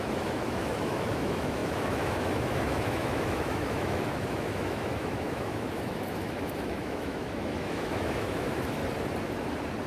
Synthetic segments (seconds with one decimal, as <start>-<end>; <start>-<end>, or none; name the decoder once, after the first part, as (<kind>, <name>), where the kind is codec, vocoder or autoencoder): 0.0-8.8 (autoencoder, DAC-VAE)